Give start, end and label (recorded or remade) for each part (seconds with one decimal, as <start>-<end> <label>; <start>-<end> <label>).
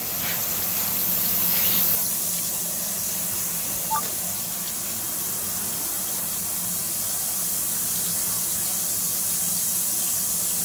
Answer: 0.0-10.6 recorded